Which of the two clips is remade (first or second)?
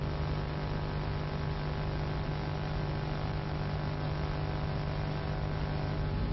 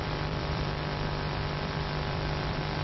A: second